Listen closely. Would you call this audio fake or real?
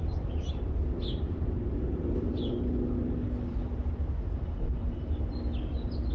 real